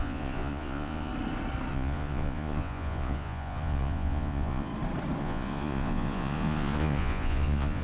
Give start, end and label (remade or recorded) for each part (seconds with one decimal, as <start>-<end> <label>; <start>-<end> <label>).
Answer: 0.0-1.1 remade; 1.1-1.7 recorded; 1.7-4.7 remade; 4.7-5.2 recorded; 5.2-7.8 remade